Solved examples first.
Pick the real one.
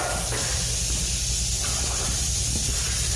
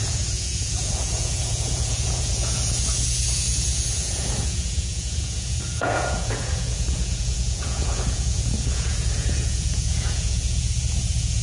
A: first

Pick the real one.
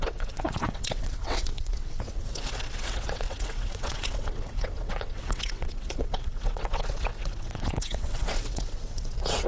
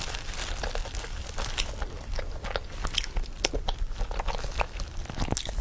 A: second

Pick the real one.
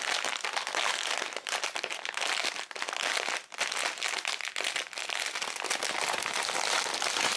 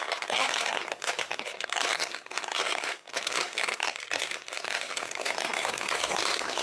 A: first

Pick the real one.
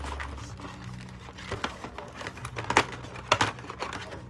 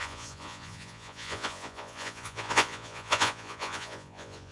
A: first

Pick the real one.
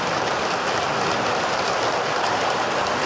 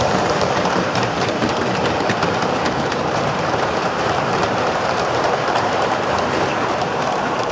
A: first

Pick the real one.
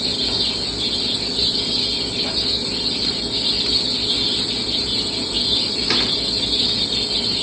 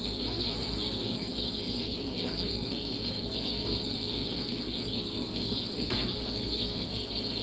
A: first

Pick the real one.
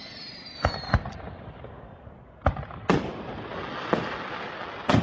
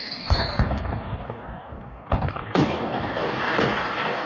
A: first